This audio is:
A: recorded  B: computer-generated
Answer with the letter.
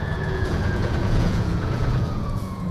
B